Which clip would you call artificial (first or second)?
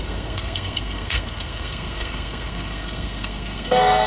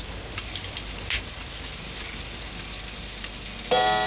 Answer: first